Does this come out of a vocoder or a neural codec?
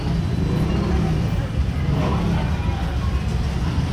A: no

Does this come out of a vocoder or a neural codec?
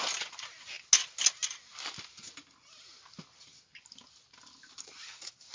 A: no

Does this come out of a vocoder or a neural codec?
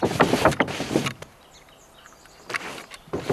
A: no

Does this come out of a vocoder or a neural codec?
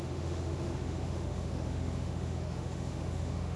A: yes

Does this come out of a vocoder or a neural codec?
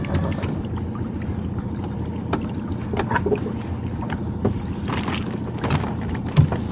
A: no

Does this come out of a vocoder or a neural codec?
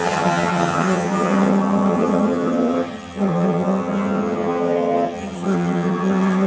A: yes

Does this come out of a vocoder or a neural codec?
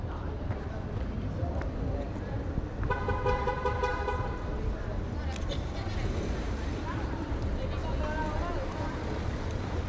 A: no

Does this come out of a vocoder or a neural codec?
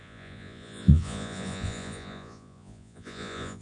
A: yes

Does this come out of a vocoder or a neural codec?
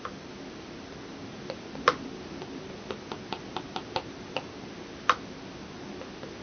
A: no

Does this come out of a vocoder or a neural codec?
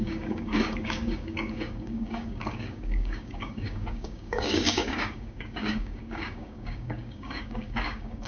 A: yes